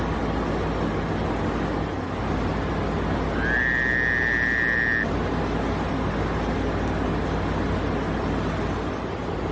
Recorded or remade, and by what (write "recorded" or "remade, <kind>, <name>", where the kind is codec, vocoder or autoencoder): recorded